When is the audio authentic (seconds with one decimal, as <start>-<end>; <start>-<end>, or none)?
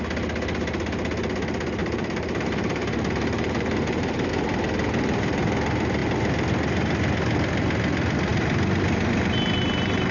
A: 0.0-1.8; 4.3-10.1